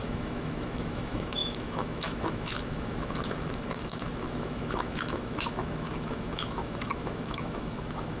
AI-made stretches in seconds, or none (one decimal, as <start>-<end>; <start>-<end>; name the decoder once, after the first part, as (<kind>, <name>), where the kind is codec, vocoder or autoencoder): 0.0-8.2 (autoencoder, DAC-VAE)